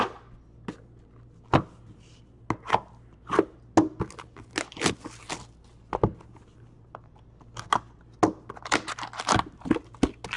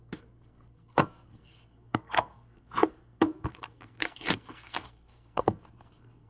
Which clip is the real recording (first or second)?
first